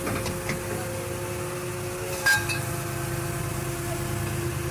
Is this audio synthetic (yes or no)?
no